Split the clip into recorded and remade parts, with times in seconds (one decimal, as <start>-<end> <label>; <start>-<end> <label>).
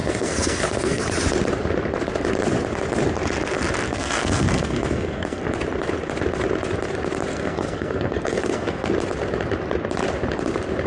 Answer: 0.0-1.0 remade; 1.0-3.9 recorded; 3.9-5.4 remade; 5.4-7.3 recorded; 7.3-8.9 remade; 8.9-10.9 recorded